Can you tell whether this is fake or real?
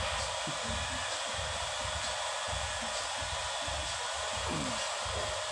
real